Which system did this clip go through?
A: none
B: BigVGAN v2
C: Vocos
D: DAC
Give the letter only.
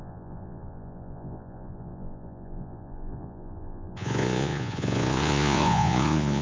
C